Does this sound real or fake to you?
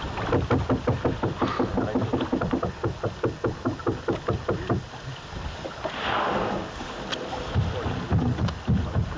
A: real